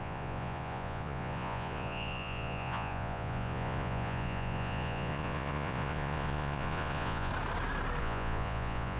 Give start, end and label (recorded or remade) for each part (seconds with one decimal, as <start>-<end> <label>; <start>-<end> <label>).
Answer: 0.0-7.3 remade; 7.3-8.0 recorded; 8.0-9.0 remade